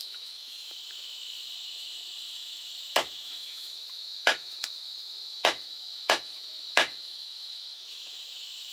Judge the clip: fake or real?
fake